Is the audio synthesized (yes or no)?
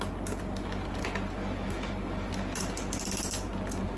no